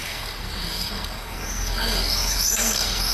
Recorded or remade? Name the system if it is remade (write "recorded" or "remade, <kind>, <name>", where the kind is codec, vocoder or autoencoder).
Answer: remade, codec, SNAC